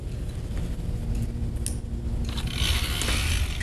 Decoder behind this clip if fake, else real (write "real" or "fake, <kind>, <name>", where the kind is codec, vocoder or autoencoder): real